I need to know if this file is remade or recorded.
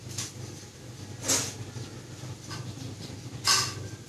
recorded